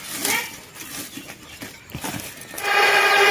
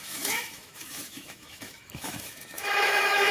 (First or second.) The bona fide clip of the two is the first